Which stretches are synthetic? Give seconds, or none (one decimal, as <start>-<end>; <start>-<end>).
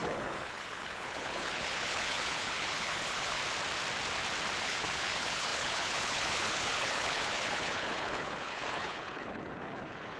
0.0-3.4; 4.6-10.2